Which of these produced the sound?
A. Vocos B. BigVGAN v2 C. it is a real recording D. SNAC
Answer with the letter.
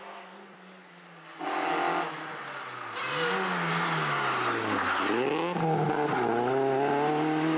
C